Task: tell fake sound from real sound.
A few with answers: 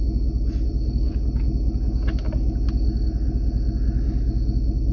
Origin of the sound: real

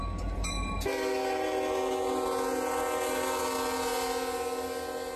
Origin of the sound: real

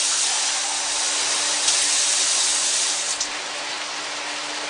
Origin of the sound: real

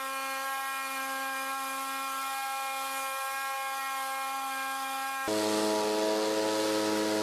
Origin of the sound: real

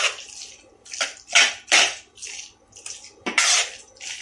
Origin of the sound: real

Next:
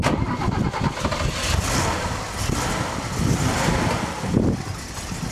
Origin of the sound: real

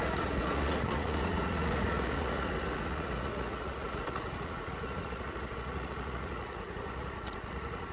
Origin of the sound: fake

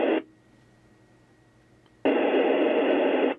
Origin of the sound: real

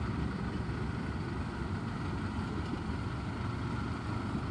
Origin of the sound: real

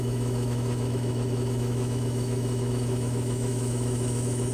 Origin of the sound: fake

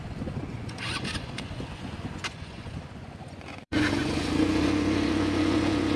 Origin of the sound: fake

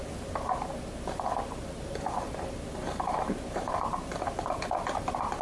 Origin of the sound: fake